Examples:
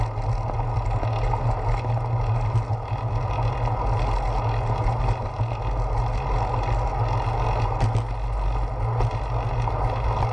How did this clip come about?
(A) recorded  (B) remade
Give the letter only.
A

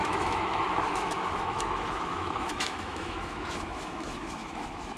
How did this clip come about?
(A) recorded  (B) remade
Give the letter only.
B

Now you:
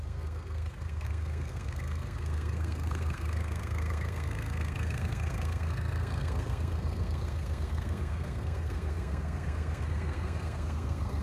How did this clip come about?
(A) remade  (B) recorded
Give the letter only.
A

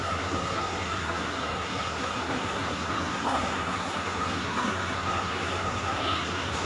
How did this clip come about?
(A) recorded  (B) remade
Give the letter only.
B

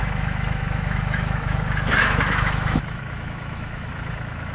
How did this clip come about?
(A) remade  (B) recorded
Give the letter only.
A